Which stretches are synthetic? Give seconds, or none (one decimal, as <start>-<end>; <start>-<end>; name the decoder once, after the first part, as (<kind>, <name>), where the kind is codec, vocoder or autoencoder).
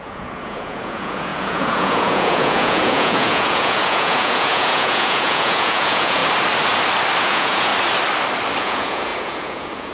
0.0-6.2 (vocoder, Vocos); 7.2-7.7; 8.6-9.9